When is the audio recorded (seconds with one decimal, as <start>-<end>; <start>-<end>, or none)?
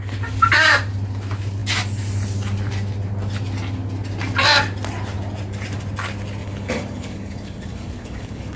0.0-6.4